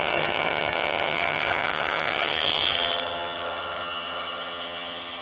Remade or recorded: remade